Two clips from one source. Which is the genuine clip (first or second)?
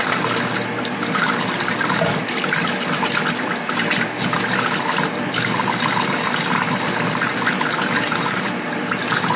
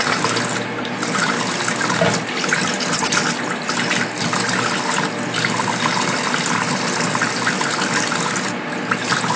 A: second